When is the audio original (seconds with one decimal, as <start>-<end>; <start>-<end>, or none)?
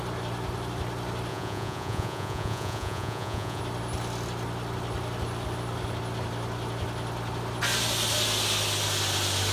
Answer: 0.0-1.3; 3.6-9.5